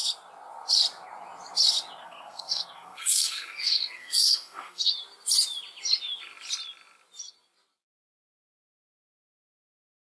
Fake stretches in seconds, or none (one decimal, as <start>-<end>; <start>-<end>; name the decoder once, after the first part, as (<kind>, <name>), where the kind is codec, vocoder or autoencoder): 2.0-4.9 (codec, SNAC)